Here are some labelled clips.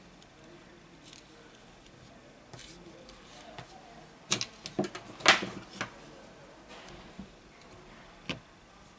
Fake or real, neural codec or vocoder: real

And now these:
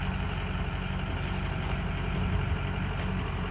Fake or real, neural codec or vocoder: real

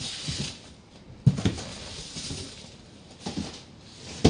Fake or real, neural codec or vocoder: real